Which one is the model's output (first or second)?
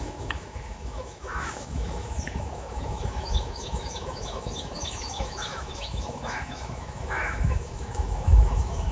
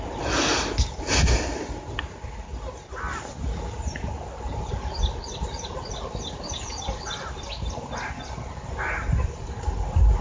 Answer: first